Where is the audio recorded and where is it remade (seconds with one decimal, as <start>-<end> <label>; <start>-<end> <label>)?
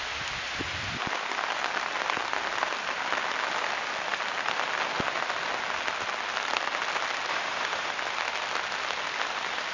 0.0-7.3 recorded; 7.3-7.9 remade; 7.9-9.7 recorded